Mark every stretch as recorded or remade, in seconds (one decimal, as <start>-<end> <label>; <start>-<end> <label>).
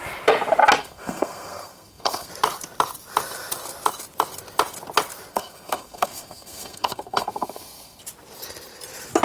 0.0-0.8 recorded; 0.8-2.3 remade; 2.3-5.3 recorded; 5.3-8.0 remade; 8.0-9.2 recorded